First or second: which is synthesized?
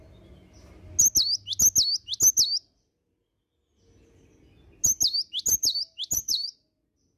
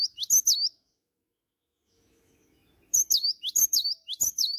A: second